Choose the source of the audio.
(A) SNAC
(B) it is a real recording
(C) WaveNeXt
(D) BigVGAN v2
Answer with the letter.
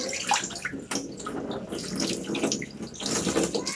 B